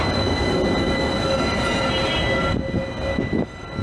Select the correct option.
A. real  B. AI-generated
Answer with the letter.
A